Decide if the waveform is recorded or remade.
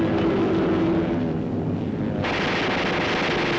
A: recorded